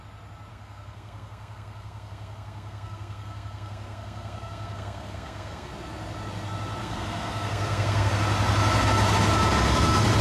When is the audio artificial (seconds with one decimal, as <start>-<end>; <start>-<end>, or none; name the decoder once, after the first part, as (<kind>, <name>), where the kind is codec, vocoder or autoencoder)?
0.5-5.7 (codec, SNAC); 6.8-8.1